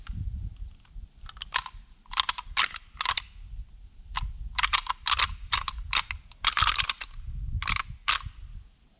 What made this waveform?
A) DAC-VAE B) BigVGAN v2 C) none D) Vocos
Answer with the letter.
C